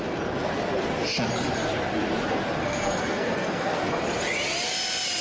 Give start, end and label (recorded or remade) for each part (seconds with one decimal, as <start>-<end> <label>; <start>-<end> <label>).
0.0-2.6 recorded; 2.6-4.0 remade; 4.0-5.2 recorded